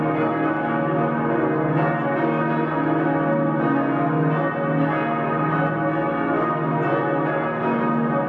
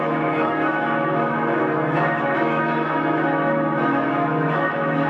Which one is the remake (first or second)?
second